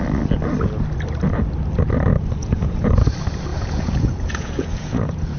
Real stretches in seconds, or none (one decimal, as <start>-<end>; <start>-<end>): 0.0-2.4; 2.9-3.5